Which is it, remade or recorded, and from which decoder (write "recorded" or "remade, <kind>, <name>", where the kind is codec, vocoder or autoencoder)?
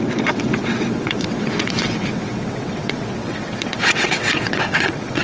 remade, vocoder, WaveNeXt